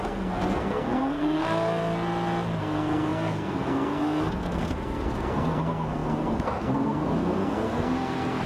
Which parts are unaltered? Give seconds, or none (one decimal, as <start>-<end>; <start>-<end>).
1.8-2.6